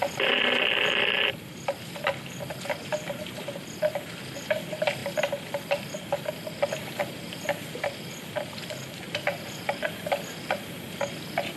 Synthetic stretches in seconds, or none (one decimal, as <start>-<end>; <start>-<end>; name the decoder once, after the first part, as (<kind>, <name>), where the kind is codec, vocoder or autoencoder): none